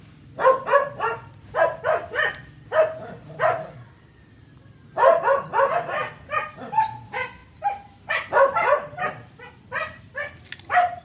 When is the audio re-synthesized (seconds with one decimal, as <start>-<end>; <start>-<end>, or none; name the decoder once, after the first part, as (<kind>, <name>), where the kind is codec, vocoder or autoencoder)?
7.4-10.0 (vocoder, BigVGAN v2)